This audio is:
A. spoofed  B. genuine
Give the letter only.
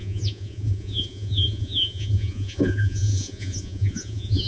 A